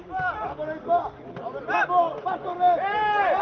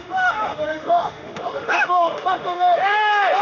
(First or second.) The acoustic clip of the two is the first